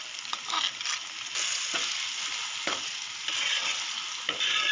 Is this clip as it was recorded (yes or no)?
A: yes